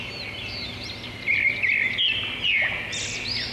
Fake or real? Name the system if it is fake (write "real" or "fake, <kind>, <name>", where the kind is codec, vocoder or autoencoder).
real